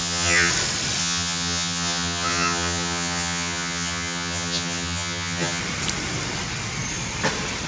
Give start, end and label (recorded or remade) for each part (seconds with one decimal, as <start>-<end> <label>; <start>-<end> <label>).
0.0-0.5 remade; 0.5-1.0 recorded; 1.0-5.6 remade; 5.6-7.7 recorded